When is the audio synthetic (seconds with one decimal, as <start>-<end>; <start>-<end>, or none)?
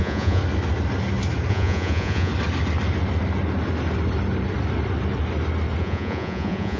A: 0.0-0.4; 1.5-2.3; 5.8-6.8